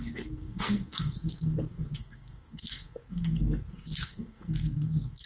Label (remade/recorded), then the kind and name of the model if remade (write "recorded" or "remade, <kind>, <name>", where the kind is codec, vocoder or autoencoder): remade, codec, SNAC